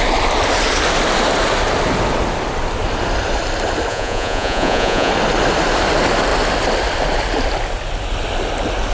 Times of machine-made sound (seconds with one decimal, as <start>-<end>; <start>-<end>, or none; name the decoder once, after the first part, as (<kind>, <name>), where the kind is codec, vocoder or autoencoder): 3.9-5.1 (vocoder, Vocos)